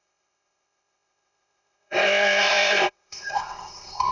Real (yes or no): no